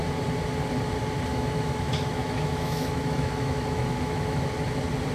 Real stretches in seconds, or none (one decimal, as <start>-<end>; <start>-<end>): 0.0-1.3; 4.4-5.1

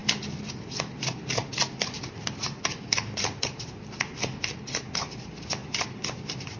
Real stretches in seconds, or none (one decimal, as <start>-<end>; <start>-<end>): 0.0-6.6

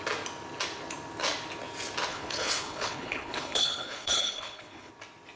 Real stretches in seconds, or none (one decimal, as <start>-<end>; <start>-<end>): 0.0-2.1; 4.9-5.4